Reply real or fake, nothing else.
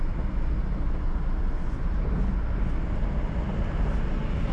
real